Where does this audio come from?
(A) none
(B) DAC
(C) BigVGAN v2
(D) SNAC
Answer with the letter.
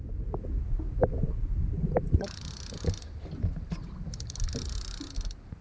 A